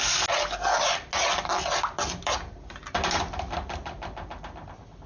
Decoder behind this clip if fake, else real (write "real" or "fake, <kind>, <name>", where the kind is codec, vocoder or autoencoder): real